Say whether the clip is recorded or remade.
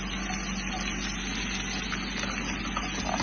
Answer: recorded